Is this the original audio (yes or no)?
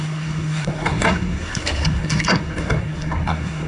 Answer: no